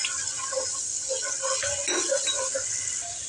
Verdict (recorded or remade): recorded